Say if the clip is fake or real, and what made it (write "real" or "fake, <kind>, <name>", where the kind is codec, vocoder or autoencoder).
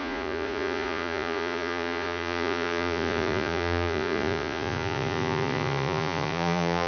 fake, vocoder, Vocos